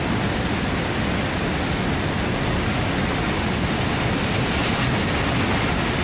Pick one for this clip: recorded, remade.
recorded